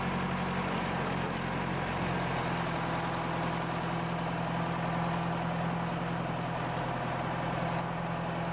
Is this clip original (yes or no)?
yes